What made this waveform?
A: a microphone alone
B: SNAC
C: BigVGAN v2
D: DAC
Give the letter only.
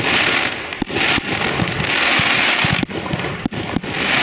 A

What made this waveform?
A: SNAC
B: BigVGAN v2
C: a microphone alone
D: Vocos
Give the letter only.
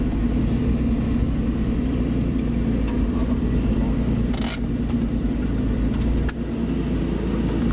C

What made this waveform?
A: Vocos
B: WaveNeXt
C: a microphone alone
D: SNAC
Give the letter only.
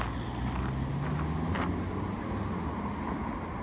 C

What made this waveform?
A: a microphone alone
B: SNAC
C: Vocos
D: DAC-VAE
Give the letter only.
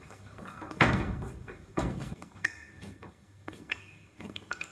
B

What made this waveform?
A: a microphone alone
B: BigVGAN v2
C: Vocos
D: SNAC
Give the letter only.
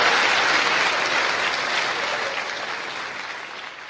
A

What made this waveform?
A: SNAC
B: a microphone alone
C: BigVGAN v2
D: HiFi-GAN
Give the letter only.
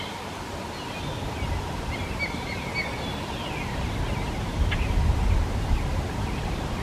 B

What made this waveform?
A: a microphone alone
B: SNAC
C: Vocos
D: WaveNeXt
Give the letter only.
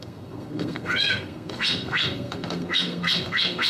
B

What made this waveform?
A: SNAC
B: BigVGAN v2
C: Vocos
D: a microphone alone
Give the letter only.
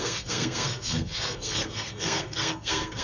A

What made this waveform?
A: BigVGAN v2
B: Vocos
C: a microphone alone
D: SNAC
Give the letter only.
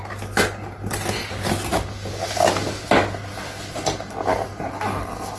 C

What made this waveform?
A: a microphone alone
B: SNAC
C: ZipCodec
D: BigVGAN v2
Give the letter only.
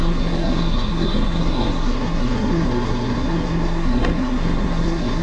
B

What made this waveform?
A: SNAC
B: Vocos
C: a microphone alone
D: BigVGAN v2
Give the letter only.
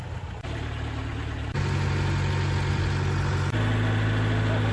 C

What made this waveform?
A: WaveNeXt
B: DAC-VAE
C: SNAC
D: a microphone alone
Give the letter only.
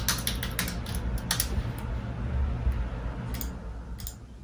D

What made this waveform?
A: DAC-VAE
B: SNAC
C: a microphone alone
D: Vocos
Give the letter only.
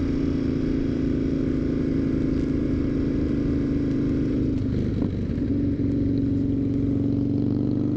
C